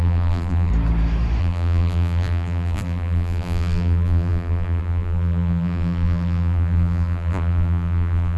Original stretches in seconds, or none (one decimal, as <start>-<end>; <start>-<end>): 0.7-1.4